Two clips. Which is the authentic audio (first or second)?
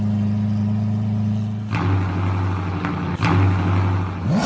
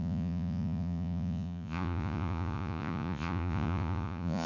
first